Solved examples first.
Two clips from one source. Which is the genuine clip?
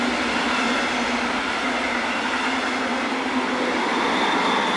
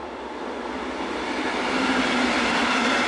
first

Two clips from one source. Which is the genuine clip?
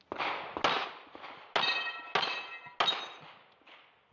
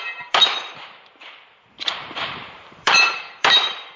first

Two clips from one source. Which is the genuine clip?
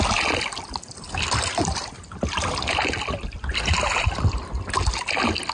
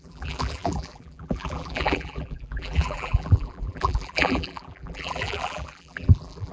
first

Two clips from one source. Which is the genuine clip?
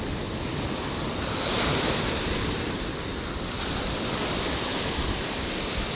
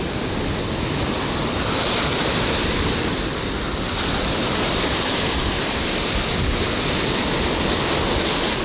second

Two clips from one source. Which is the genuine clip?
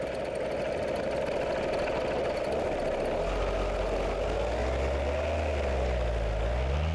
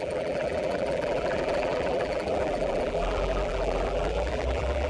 first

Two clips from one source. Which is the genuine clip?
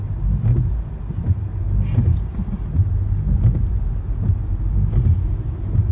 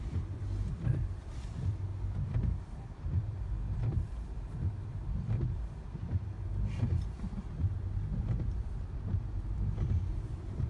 first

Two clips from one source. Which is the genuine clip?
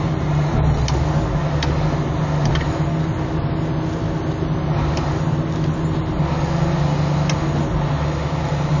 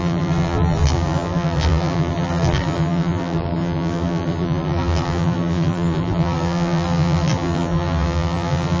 first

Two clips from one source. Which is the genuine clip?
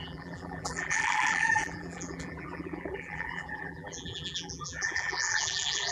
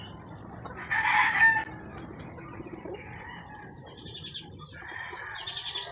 second